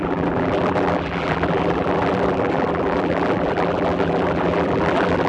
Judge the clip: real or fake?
fake